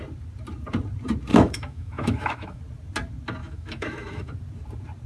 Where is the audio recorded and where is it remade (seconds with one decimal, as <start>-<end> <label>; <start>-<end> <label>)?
0.0-1.3 recorded; 1.3-2.6 remade; 2.6-3.4 recorded; 3.4-4.3 remade; 4.3-5.1 recorded